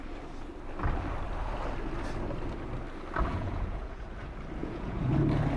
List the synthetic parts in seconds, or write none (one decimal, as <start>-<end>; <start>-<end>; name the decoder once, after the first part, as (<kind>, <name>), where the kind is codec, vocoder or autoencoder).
3.3-4.0 (vocoder, Vocos); 4.6-5.1